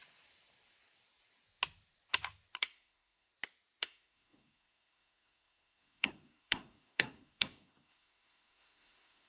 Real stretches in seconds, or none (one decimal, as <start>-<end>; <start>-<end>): 0.0-2.6; 3.3-3.8